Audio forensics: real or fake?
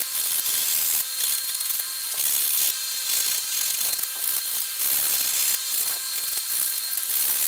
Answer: real